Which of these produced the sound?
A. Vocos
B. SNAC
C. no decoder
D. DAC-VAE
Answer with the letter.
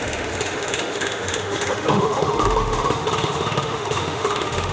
D